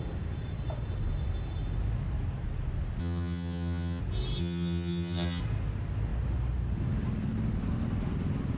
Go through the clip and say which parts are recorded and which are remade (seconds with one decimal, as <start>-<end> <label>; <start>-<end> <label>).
0.0-3.0 recorded; 3.0-4.0 remade; 4.0-4.4 recorded; 4.4-5.4 remade; 5.4-8.6 recorded